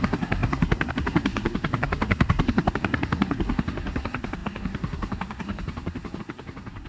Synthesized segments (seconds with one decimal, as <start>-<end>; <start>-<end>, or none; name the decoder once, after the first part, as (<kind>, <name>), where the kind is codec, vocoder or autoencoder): 0.0-6.9 (codec, SNAC)